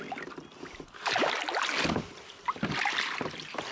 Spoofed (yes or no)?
no